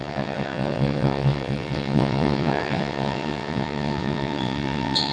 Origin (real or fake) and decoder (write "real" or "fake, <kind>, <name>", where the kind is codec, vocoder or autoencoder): fake, vocoder, WaveNeXt